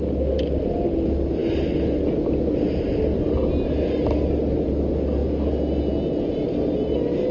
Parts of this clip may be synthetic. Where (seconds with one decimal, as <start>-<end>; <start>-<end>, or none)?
none